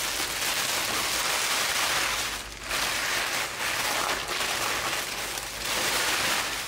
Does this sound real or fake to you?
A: real